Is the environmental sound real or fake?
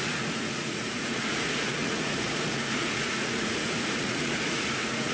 fake